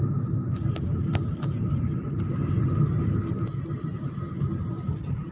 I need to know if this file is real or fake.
real